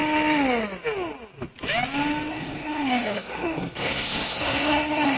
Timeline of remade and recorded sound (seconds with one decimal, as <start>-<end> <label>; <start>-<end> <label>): 0.0-2.3 recorded; 2.3-5.2 remade